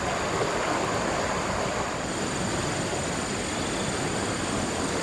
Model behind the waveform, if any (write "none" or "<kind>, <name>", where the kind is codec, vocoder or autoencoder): none